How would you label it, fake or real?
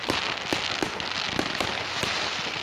real